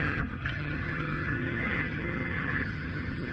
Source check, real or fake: fake